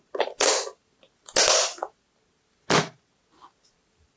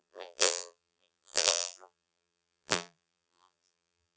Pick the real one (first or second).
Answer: first